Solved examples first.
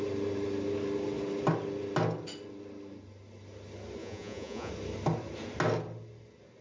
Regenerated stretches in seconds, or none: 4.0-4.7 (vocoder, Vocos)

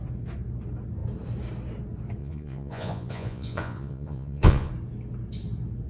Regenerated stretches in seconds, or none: 2.2-4.7 (vocoder, Vocos)

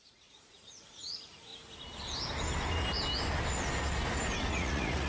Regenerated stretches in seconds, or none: 0.0-1.5 (vocoder, Vocos); 4.5-5.1

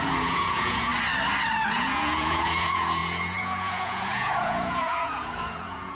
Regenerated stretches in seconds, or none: 0.0-0.9 (vocoder, Vocos); 1.7-5.9

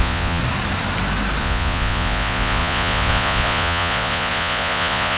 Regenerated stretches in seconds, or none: 0.0-0.4 (vocoder, Vocos); 1.4-5.2

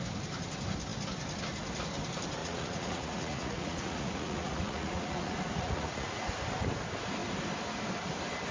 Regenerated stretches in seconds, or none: 2.4-6.3 (vocoder, Vocos)

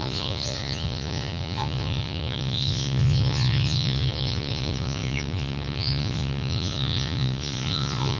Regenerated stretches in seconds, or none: 0.0-8.2 (vocoder, Vocos)